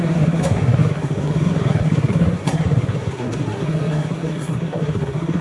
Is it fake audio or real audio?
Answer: fake